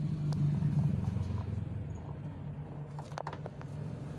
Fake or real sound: real